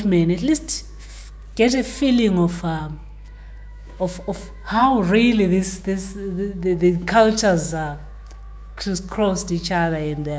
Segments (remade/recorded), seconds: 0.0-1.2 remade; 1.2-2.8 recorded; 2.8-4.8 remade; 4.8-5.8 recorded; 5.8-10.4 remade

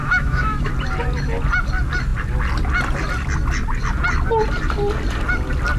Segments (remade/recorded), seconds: 0.0-0.7 remade; 0.7-5.8 recorded

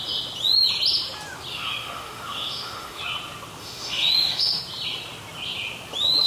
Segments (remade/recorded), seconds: 0.0-1.5 recorded; 1.5-3.0 remade; 3.0-3.6 recorded; 3.6-4.6 remade; 4.6-6.3 recorded

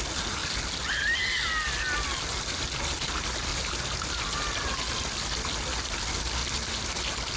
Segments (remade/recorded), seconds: 0.0-7.4 recorded

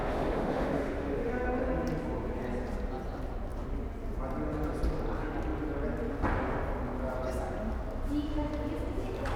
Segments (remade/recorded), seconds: 0.0-1.3 remade; 1.3-9.4 recorded

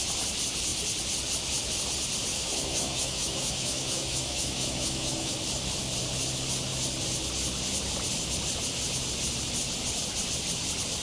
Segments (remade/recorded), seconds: 0.0-2.3 recorded; 2.3-5.3 remade; 5.3-11.0 recorded